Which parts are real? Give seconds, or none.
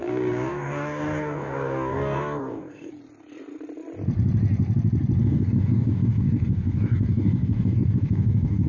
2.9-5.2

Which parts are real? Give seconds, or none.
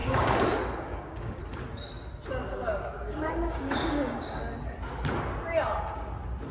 1.4-2.7; 4.4-6.5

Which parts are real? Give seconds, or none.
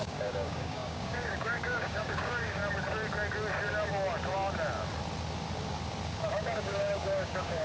2.6-6.3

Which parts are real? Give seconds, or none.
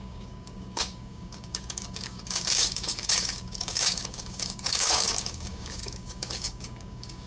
none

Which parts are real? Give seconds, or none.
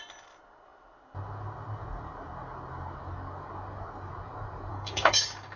0.0-4.7